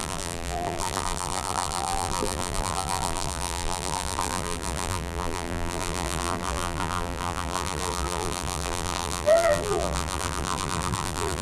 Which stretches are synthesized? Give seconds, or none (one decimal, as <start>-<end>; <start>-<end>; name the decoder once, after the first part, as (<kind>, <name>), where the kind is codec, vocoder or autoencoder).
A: 0.0-11.4 (vocoder, BigVGAN v2)